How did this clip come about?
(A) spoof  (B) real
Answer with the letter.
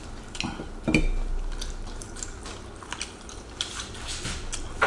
B